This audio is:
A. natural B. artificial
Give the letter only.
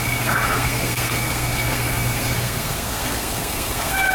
B